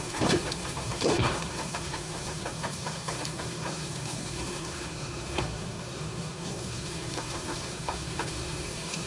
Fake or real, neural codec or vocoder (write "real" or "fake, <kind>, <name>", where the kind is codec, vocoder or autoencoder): fake, codec, SNAC